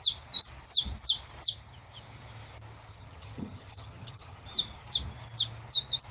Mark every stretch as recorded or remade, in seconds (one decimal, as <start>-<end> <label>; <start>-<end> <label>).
0.0-2.9 recorded; 2.9-4.5 remade; 4.5-6.1 recorded